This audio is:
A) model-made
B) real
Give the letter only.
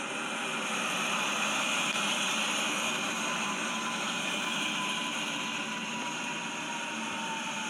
B